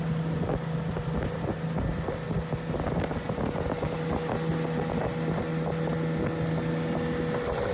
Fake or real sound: real